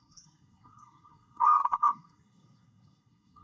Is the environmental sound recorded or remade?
remade